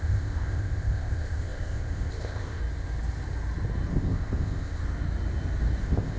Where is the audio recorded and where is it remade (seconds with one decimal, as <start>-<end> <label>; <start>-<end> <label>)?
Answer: 0.0-2.6 remade; 2.6-3.9 recorded; 3.9-4.8 remade; 4.8-5.8 recorded; 5.8-6.2 remade